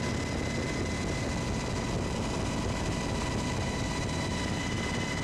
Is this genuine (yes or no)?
yes